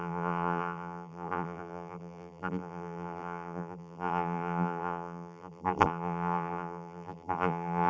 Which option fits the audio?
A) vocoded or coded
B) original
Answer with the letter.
A